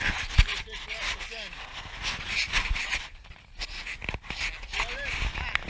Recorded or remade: recorded